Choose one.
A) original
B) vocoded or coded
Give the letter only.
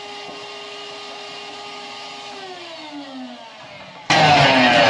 A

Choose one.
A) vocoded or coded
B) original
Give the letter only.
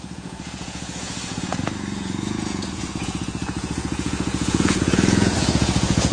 A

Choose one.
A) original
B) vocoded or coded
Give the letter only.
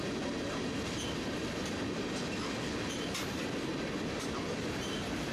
A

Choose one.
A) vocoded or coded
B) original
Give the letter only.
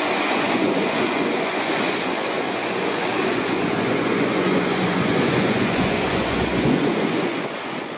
A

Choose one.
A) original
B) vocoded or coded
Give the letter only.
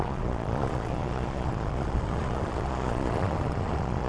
B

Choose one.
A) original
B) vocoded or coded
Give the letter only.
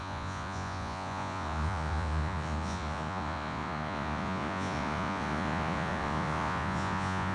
B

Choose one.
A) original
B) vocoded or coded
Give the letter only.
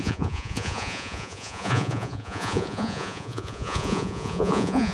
B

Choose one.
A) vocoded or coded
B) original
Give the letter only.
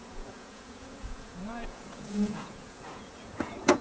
A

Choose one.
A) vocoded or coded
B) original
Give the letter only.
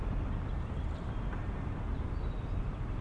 B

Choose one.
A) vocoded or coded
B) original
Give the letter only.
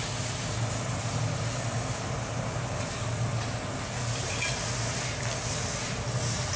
B